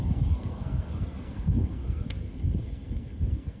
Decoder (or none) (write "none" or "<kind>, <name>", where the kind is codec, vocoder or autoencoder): codec, SNAC